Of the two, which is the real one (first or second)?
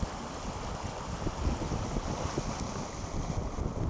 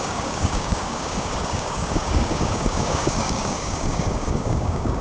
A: first